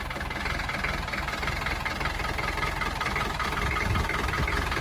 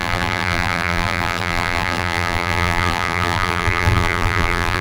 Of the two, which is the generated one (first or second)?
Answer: second